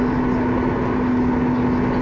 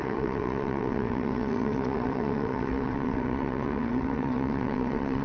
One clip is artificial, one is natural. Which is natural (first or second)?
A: first